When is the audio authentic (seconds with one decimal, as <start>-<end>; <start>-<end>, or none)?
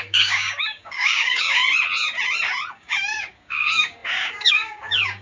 1.6-2.7